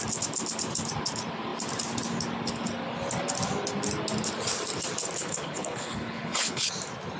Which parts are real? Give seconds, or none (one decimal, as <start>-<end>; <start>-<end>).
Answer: 0.0-5.2; 6.7-7.2